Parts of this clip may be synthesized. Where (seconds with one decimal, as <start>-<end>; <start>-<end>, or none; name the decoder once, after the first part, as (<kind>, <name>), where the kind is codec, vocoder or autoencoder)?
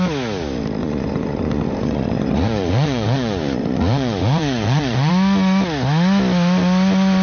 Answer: 0.8-5.1 (vocoder, Vocos)